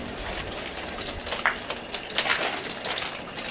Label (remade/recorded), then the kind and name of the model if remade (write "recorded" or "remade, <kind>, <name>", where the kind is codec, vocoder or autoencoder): recorded